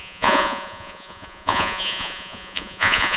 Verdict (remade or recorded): remade